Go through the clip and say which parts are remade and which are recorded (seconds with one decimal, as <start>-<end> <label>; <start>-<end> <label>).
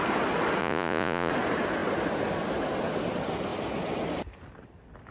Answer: 0.0-0.6 recorded; 0.6-1.3 remade; 1.3-5.1 recorded